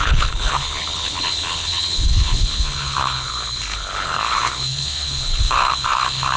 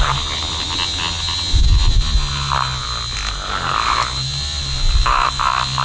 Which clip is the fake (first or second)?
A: first